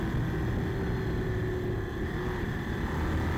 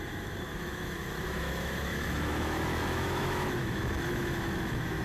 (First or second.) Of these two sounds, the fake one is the second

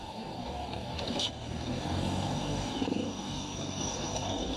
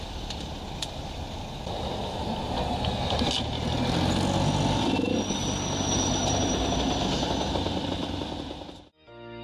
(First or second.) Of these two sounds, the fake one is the first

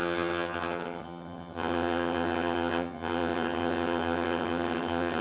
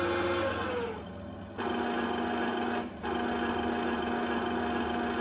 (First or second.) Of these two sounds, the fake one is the first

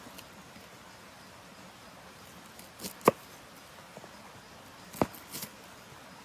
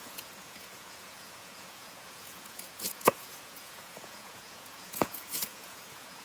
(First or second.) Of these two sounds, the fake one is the second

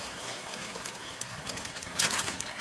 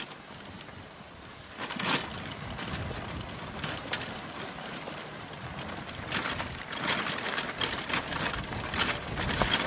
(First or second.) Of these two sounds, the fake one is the first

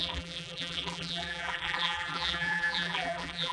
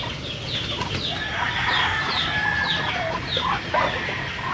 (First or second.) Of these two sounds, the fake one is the first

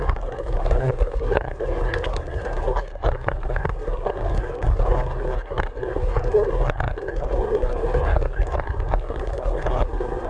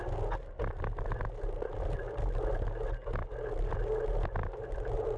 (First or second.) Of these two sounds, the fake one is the first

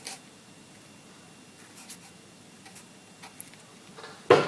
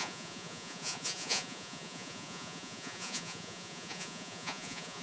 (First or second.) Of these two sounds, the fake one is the second